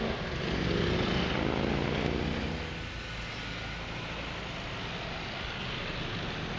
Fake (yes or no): no